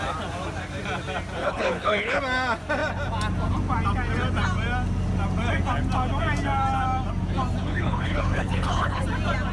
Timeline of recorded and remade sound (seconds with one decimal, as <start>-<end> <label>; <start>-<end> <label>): 0.0-1.4 recorded; 1.4-2.2 remade; 2.2-7.6 recorded; 7.6-9.0 remade; 9.0-9.5 recorded